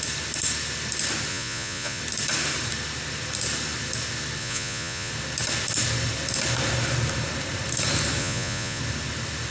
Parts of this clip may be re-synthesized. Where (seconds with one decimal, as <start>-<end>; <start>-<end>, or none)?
1.3-2.0; 4.4-5.1; 8.2-8.8